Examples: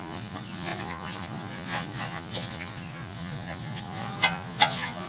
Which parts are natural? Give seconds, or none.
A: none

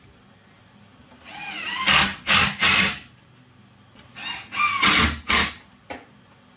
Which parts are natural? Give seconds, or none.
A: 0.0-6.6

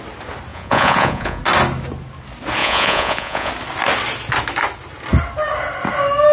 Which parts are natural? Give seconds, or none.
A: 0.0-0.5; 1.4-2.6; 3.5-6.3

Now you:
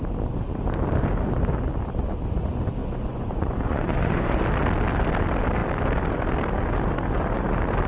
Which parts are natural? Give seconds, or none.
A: 0.0-2.8; 4.4-7.9

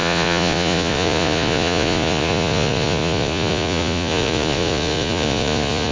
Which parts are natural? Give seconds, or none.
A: none

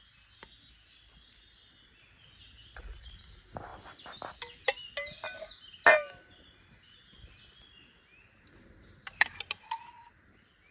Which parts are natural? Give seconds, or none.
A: 0.0-10.7

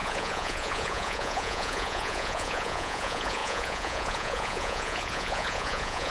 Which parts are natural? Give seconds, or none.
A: none